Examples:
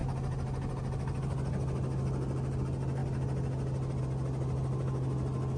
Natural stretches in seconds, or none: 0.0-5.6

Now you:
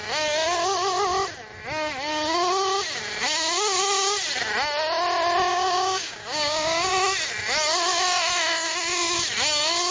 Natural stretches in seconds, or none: 0.0-5.5; 6.9-9.9

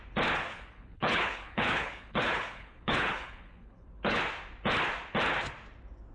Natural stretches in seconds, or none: 0.0-0.5; 4.2-6.1